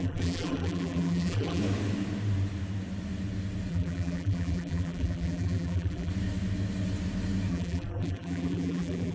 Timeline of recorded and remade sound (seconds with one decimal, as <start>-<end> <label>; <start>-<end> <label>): 0.0-1.6 remade; 1.6-3.7 recorded; 3.7-6.1 remade; 6.1-7.5 recorded; 7.5-9.1 remade